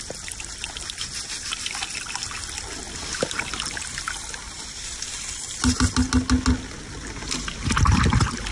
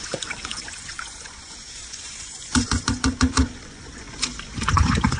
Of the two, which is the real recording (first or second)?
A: first